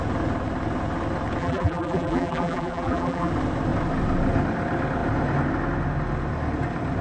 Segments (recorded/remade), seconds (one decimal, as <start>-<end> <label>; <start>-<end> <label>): 0.0-1.4 recorded; 1.4-3.3 remade; 3.3-7.0 recorded